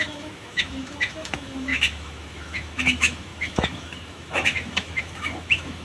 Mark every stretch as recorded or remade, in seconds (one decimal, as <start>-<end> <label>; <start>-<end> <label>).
0.0-5.8 remade